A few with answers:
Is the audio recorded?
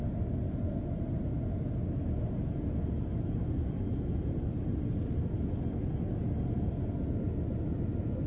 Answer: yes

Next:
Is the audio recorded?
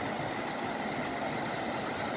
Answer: yes